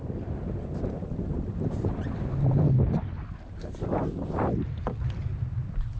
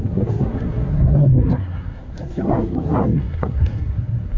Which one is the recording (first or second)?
first